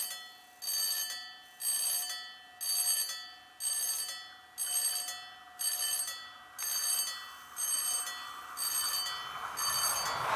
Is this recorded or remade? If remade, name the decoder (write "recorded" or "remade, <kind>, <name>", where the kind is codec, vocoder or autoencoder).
recorded